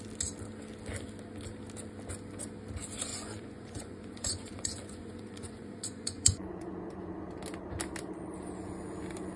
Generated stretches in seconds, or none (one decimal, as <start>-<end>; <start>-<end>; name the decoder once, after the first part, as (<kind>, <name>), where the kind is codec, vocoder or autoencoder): 3.1-7.1 (vocoder, Vocos)